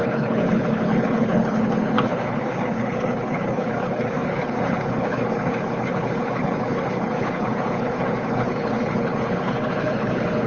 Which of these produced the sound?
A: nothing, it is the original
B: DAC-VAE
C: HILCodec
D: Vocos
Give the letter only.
C